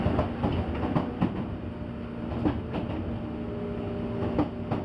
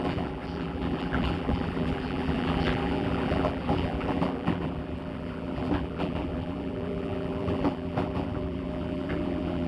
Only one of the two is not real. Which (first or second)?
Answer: second